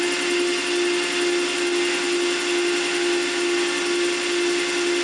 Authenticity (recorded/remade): recorded